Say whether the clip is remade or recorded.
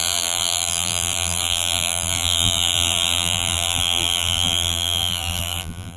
remade